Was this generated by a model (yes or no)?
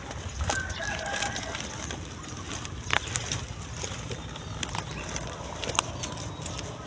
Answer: no